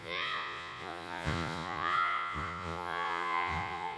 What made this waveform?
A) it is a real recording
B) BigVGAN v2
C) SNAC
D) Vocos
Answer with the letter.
D